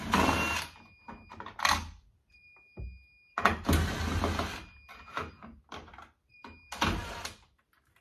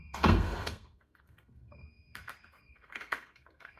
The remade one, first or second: second